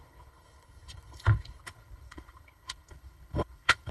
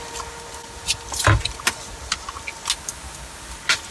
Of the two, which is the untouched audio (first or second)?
second